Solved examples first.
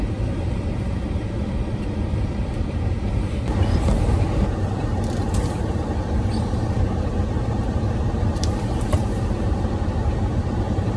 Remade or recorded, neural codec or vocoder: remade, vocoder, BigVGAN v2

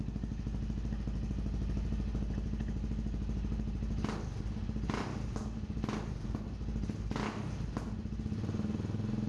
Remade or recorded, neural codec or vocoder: recorded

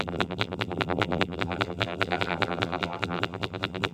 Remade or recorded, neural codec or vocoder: remade, vocoder, BigVGAN v2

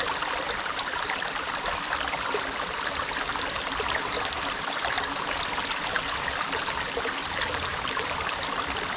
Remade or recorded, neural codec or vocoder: remade, vocoder, BigVGAN v2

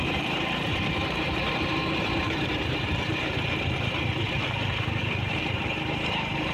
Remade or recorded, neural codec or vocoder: remade, vocoder, BigVGAN v2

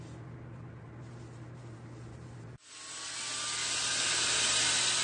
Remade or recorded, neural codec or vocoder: recorded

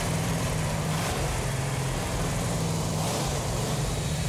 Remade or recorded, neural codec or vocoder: remade, vocoder, BigVGAN v2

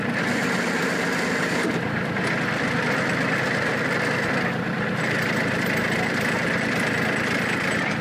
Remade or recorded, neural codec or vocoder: remade, vocoder, BigVGAN v2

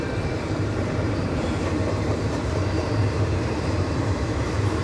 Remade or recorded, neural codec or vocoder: remade, vocoder, BigVGAN v2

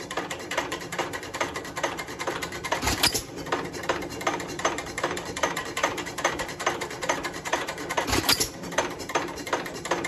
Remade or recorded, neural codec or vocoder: remade, vocoder, BigVGAN v2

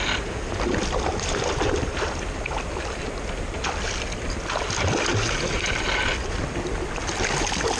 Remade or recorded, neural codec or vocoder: recorded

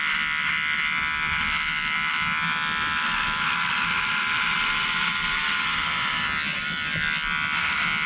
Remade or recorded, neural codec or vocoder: remade, vocoder, BigVGAN v2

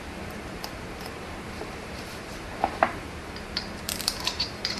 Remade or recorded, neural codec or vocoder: remade, vocoder, BigVGAN v2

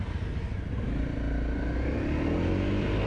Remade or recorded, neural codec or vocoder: recorded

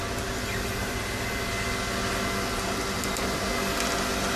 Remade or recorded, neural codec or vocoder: recorded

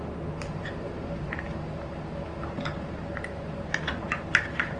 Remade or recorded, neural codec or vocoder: remade, vocoder, BigVGAN v2